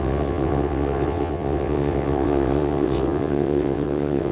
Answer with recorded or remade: remade